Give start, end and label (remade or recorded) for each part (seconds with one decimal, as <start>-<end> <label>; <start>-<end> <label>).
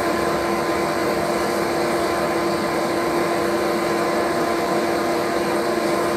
0.0-6.2 recorded